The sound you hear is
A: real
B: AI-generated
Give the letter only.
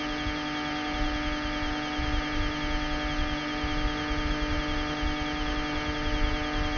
A